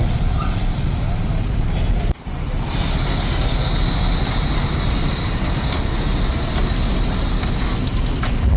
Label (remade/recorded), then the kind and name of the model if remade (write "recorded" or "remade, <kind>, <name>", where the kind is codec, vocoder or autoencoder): recorded